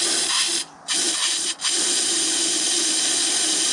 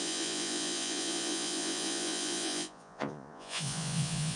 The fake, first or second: second